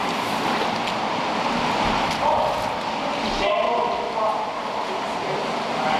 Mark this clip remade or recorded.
recorded